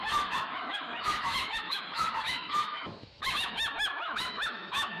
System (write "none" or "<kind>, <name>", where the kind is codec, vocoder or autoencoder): autoencoder, DAC-VAE